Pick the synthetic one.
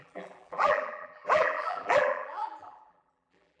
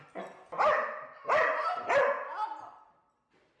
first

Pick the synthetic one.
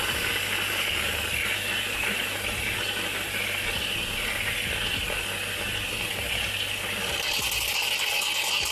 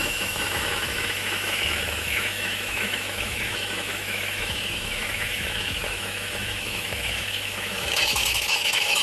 second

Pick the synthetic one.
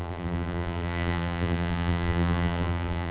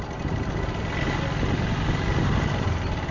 first